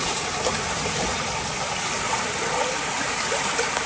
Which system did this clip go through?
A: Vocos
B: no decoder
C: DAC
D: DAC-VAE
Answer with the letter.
B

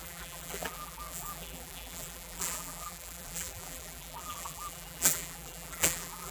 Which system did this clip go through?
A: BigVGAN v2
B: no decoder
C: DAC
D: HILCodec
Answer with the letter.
A